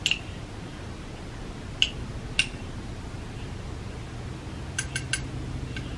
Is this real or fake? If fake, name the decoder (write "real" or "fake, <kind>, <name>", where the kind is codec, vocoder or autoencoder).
real